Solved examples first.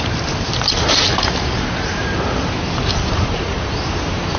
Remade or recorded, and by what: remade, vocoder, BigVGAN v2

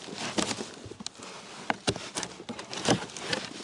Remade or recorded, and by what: recorded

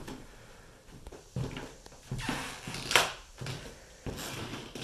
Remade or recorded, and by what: recorded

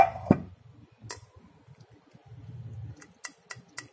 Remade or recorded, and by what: recorded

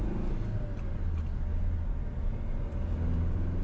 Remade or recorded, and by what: recorded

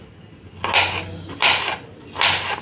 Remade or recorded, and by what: recorded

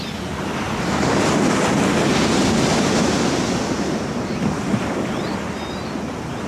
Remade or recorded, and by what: recorded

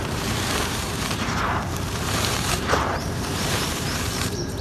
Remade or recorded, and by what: remade, vocoder, BigVGAN v2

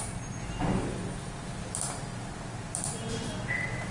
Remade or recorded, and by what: recorded